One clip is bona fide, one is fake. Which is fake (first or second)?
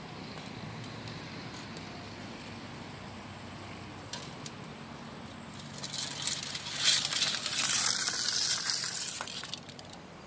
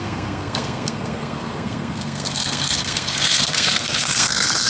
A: second